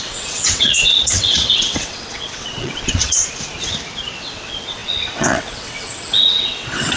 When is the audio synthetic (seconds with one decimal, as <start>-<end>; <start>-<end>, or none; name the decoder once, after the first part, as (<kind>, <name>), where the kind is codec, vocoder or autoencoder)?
0.0-3.2 (vocoder, WaveNeXt); 4.2-7.0

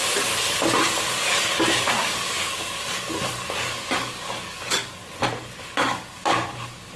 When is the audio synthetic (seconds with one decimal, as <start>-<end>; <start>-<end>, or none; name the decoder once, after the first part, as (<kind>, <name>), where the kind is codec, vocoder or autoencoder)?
1.0-5.0 (codec, DAC); 5.6-7.0

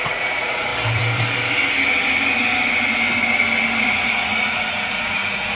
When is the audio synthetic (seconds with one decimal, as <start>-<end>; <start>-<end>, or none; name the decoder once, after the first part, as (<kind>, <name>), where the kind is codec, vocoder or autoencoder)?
0.0-0.7 (vocoder, Vocos); 3.8-5.5

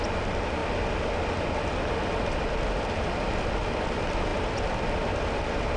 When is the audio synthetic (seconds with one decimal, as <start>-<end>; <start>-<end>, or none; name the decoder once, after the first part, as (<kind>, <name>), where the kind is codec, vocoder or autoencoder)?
none